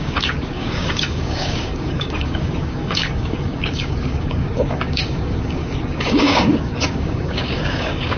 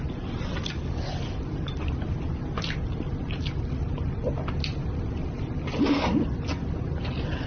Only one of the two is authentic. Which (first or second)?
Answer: second